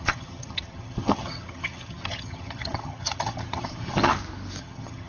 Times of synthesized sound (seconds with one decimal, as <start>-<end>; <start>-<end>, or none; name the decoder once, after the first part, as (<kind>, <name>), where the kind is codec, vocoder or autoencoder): 0.0-4.1 (vocoder, HiFi-GAN); 4.6-5.1